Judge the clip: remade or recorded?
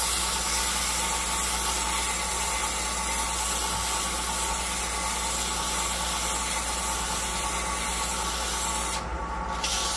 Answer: recorded